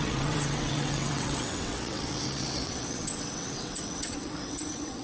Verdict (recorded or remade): remade